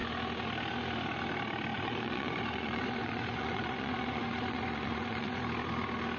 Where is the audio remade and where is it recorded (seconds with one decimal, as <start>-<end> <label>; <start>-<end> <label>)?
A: 0.0-1.7 recorded; 1.7-5.4 remade; 5.4-6.2 recorded